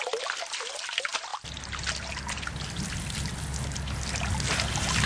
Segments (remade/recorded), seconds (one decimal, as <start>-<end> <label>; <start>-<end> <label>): 0.0-5.1 recorded